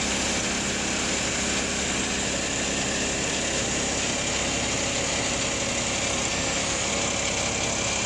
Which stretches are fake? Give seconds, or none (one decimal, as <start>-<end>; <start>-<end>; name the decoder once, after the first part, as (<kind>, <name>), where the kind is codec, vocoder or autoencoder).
6.3-6.9 (codec, SNAC)